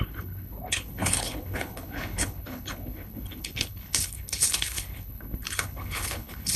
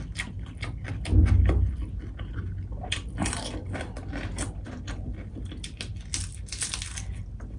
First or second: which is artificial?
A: first